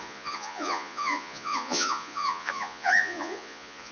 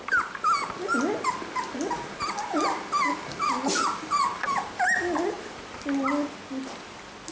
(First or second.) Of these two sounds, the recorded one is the second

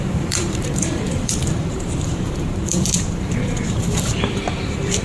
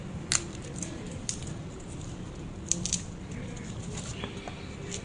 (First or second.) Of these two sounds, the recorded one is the second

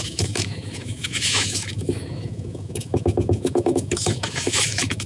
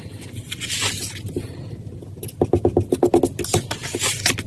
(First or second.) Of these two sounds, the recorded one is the second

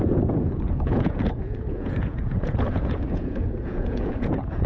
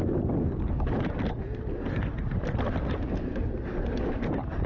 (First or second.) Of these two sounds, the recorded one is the second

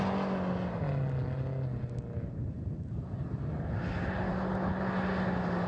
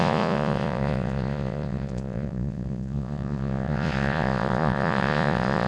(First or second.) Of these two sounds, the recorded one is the first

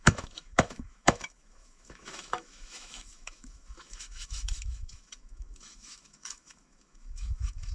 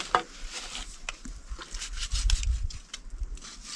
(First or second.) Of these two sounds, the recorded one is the second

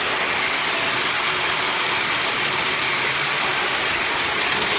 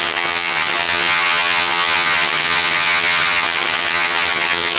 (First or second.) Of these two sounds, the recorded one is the first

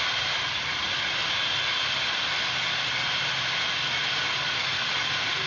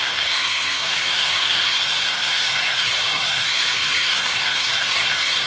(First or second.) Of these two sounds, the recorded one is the first